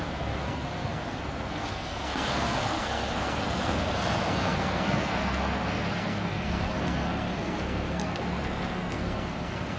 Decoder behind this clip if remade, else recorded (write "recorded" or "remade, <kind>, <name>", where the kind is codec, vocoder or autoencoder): remade, codec, SNAC